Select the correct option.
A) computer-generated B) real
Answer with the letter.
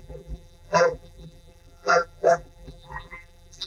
A